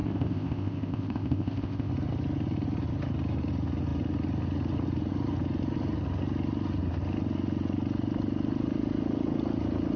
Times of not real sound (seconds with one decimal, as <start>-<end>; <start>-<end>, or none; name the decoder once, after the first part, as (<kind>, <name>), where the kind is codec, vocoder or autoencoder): 0.0-1.9 (codec, ZipCodec)